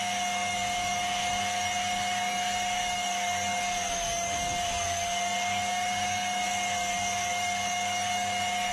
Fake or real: fake